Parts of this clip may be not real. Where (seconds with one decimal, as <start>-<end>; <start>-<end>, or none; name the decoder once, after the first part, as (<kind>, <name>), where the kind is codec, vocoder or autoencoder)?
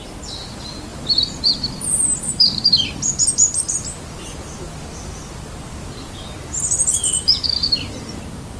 0.0-8.6 (vocoder, BigVGAN v2)